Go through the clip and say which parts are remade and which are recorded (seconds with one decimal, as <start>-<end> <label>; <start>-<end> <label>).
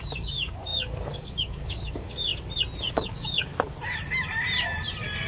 0.0-2.3 remade; 2.3-2.9 recorded; 2.9-3.5 remade; 3.5-5.3 recorded